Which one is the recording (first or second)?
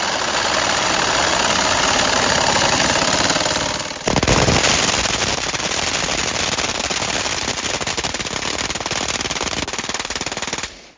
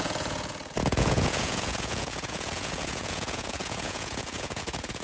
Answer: first